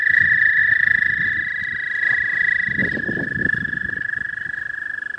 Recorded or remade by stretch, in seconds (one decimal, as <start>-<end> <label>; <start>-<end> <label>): 0.0-5.2 recorded